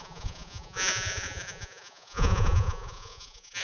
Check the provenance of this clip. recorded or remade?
remade